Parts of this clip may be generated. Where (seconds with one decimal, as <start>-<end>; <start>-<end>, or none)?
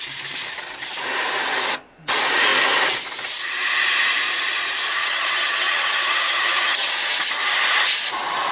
5.0-6.9